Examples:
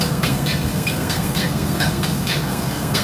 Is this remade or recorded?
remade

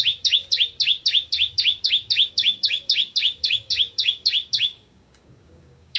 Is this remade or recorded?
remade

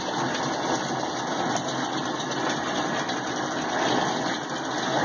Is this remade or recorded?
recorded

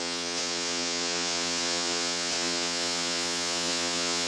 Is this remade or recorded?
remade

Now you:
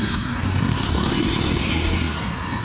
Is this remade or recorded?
remade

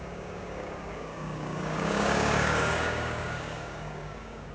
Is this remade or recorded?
remade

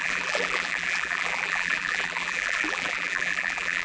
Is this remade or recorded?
remade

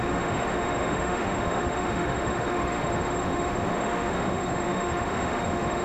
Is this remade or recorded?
remade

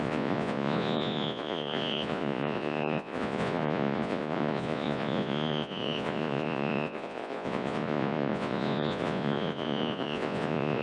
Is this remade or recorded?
remade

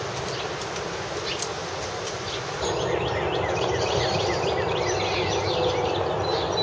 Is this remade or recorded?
recorded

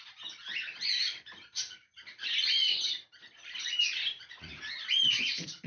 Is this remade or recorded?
remade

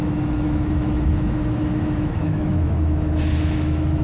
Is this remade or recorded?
remade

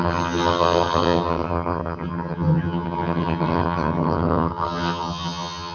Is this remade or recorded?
remade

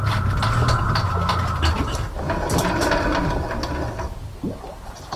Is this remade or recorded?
recorded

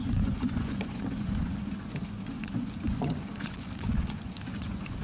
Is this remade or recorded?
remade